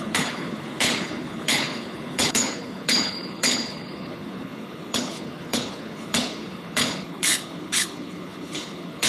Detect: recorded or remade remade